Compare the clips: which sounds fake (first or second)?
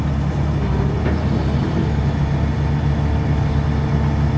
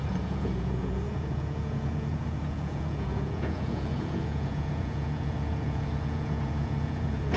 second